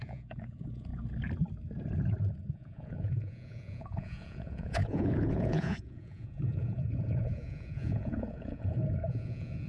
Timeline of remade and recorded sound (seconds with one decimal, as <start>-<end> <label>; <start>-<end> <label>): 0.0-0.9 remade; 0.9-2.3 recorded; 2.3-9.7 remade